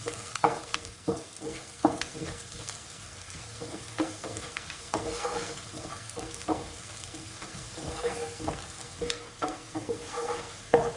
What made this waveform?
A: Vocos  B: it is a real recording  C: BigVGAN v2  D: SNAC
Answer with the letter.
D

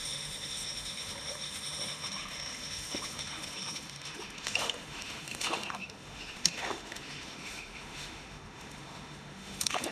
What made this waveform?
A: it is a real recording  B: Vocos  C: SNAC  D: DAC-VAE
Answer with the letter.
D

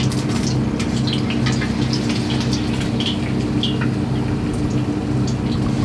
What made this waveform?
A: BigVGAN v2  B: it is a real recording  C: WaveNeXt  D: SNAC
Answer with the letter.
B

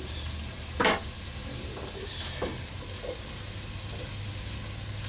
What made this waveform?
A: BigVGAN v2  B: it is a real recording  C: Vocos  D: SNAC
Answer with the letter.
B